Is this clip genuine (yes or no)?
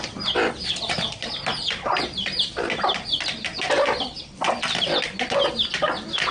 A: yes